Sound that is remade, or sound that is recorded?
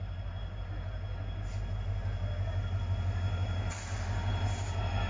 recorded